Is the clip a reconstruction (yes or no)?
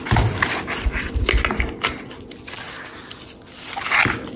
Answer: no